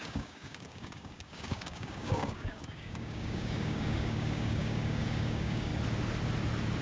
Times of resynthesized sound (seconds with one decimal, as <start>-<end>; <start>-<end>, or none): 0.0-5.7